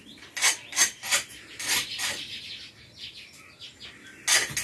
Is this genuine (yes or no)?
yes